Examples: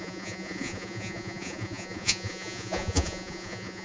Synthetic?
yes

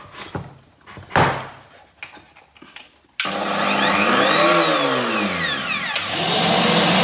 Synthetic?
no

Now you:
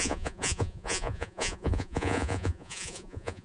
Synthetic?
yes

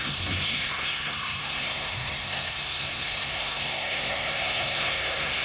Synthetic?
yes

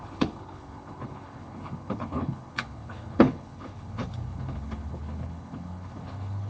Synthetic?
yes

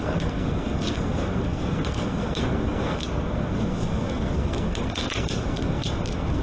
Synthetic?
yes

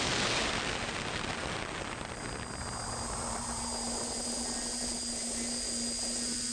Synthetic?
no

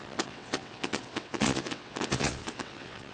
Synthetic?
yes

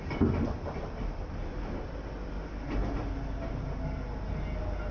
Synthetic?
no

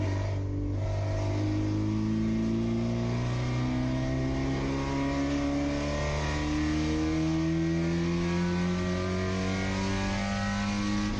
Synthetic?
no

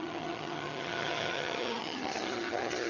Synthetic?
yes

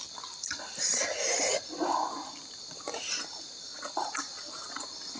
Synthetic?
yes